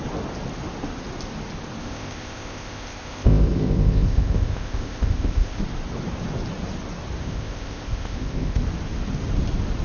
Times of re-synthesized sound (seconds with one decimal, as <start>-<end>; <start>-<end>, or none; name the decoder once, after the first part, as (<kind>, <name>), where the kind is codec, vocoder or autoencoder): 1.8-5.6 (codec, ZipCodec); 7.2-8.6